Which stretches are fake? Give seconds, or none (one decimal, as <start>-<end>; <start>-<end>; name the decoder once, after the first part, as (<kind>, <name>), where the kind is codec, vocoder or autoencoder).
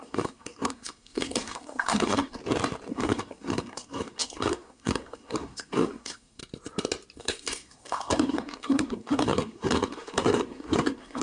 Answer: 0.0-2.4 (codec, SNAC); 2.9-6.4; 7.2-11.2